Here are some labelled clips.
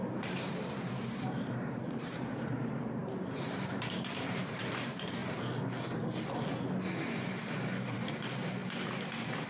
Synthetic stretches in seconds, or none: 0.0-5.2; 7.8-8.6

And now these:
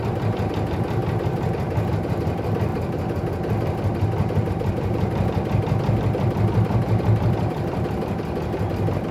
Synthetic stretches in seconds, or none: 0.0-1.0; 1.9-2.7; 4.5-9.1

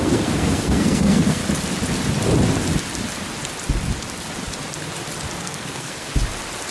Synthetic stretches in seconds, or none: 0.0-1.4; 5.4-6.1

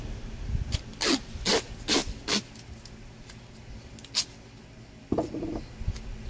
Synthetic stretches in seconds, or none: none

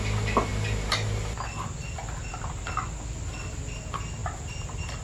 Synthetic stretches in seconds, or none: none

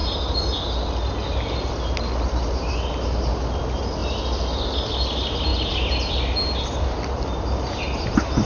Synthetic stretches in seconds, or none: none

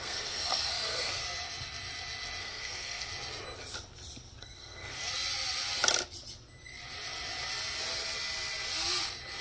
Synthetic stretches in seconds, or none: 0.0-1.2; 2.4-3.1; 4.4-5.0